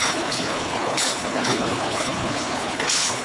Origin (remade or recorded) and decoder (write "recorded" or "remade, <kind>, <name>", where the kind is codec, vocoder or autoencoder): remade, codec, HILCodec